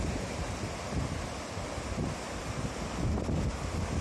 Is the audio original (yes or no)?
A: yes